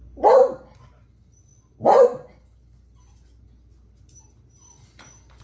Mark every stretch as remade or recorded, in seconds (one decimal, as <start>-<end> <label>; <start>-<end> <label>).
0.0-5.4 recorded